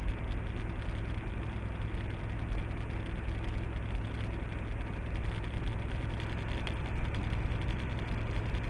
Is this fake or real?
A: real